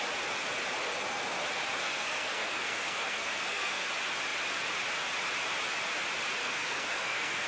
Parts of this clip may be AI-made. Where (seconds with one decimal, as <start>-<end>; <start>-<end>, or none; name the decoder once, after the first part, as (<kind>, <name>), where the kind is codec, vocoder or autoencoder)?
1.8-3.9 (codec, SNAC); 6.4-7.5